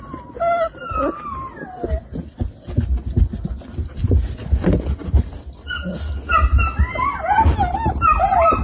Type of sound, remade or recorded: recorded